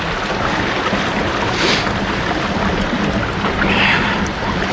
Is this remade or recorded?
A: recorded